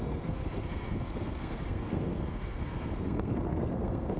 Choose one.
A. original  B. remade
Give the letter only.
B